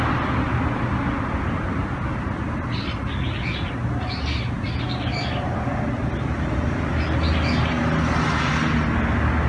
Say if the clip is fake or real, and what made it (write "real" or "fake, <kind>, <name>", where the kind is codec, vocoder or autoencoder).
real